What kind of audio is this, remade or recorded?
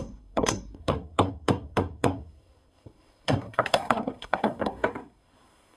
remade